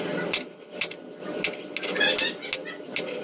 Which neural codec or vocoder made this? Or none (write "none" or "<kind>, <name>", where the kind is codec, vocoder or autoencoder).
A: none